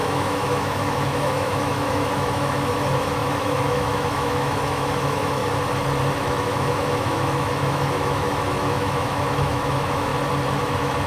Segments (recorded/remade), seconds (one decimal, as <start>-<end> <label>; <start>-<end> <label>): 0.0-5.4 remade; 5.4-6.2 recorded; 6.2-10.1 remade; 10.1-10.6 recorded; 10.6-11.1 remade